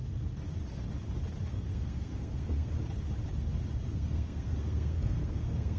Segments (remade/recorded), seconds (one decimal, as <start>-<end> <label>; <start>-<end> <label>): 0.0-1.5 recorded; 1.5-2.7 remade; 2.7-3.9 recorded; 3.9-5.8 remade